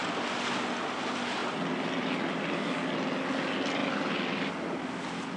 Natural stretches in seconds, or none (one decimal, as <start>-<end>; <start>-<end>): 0.0-5.4